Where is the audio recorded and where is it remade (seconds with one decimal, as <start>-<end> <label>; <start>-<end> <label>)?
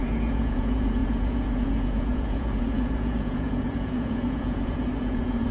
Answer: 0.0-5.5 remade